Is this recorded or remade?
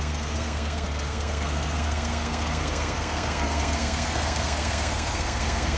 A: remade